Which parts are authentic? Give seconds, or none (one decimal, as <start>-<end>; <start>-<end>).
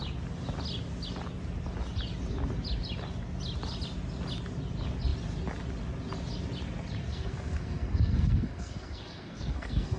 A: 0.0-7.1